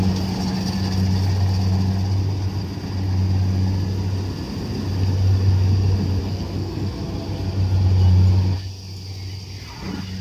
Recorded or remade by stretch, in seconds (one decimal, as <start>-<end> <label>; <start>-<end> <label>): 0.0-6.2 recorded; 6.2-7.0 remade; 7.0-10.2 recorded